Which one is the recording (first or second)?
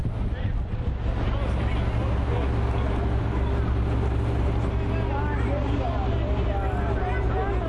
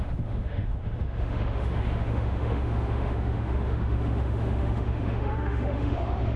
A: first